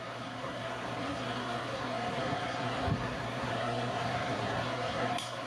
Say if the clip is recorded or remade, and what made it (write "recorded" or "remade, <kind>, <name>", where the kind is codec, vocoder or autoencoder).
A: remade, codec, SNAC